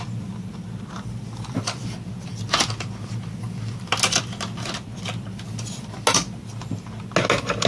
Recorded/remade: recorded